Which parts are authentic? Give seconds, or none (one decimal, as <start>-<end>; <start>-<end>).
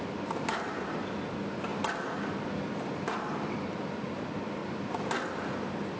0.0-6.0